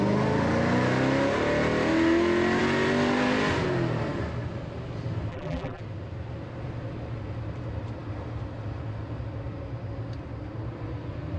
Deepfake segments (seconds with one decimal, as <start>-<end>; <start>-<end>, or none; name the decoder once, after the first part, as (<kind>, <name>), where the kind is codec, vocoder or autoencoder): 5.3-5.8 (vocoder, BigVGAN v2)